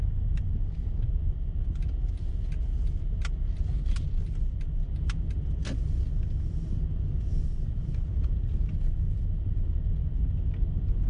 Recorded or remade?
recorded